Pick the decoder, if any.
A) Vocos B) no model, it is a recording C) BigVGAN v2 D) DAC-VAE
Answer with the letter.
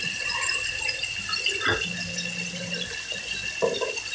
B